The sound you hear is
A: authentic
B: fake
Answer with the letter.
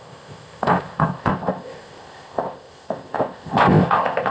B